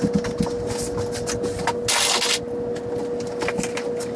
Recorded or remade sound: recorded